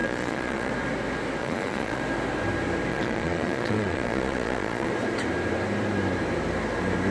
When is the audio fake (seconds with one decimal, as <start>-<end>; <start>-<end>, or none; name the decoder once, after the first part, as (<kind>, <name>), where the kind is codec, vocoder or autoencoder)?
0.0-0.7 (vocoder, Vocos); 1.4-2.0; 2.9-4.9